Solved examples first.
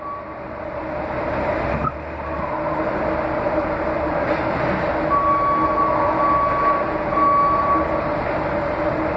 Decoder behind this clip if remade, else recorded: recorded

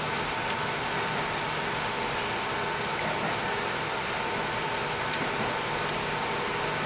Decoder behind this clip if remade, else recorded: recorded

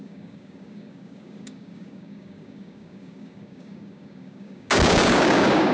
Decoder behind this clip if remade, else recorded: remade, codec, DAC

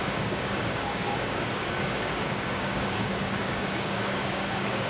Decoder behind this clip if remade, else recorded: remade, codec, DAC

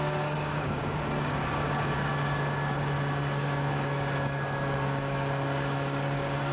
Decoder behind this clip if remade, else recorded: remade, codec, DAC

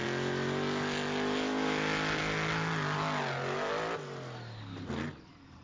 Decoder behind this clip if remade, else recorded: recorded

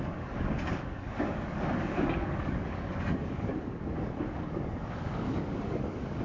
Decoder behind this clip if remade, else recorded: remade, codec, DAC